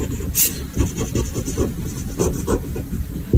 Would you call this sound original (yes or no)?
yes